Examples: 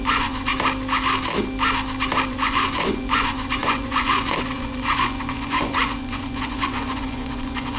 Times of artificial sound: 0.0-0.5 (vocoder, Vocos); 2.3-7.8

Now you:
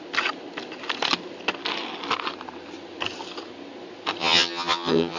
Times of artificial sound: 4.2-5.2 (vocoder, HiFi-GAN)

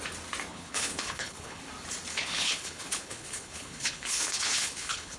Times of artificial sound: 0.5-1.6 (codec, HILCodec); 2.1-5.2

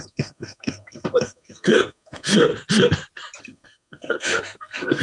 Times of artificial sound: 0.0-2.5 (codec, SNAC); 3.4-5.0

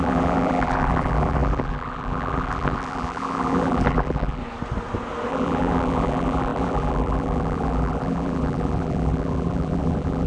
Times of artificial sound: 0.0-4.4 (vocoder, BigVGAN v2); 5.3-10.3

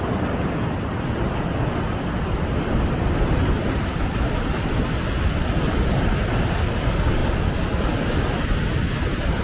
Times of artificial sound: none